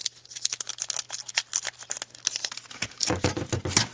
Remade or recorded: recorded